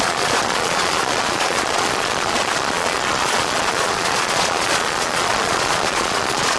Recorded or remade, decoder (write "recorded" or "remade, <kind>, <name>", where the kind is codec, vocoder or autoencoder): remade, vocoder, Vocos